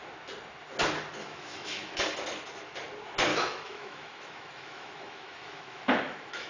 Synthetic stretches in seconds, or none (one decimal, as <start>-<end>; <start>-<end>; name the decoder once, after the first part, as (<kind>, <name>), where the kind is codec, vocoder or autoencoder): 1.2-2.0 (autoencoder, DAC-VAE); 3.3-6.5